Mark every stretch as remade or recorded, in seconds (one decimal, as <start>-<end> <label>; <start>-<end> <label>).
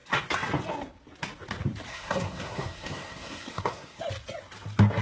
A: 0.0-1.9 recorded; 1.9-4.0 remade; 4.0-5.0 recorded